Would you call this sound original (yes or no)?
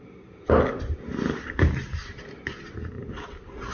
yes